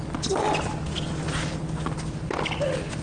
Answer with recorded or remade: recorded